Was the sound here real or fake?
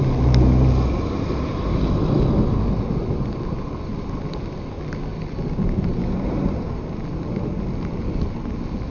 real